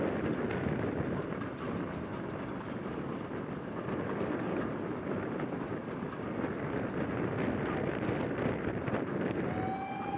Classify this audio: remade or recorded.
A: recorded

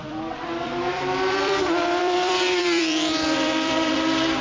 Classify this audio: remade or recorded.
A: remade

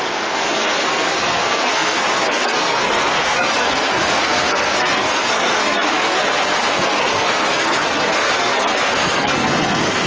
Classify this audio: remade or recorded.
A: remade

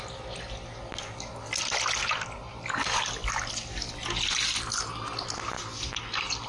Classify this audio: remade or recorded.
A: recorded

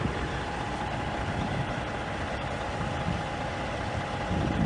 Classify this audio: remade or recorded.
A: recorded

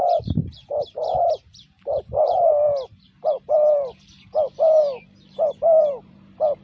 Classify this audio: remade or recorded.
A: remade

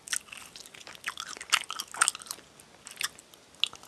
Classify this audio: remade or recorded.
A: recorded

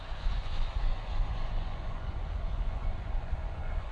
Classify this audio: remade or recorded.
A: remade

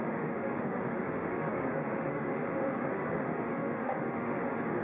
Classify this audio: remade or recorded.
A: remade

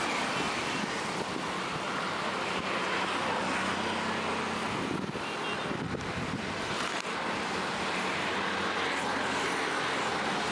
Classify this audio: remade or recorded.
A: recorded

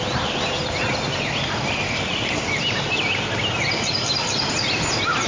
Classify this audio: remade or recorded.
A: recorded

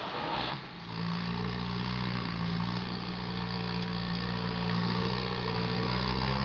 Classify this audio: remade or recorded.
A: remade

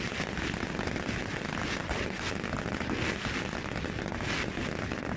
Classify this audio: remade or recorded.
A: recorded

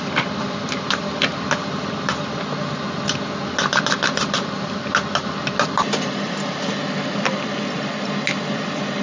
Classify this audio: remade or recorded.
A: recorded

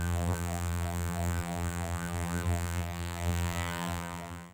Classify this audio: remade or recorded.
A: remade